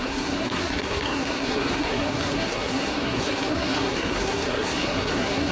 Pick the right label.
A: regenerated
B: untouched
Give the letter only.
A